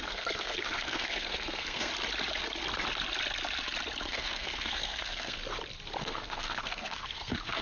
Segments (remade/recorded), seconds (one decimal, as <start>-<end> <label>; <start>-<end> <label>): 0.0-1.9 remade; 1.9-4.1 recorded; 4.1-5.4 remade; 5.4-6.0 recorded; 6.0-7.6 remade